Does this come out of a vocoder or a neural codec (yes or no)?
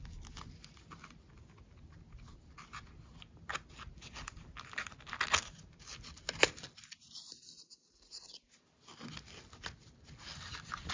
no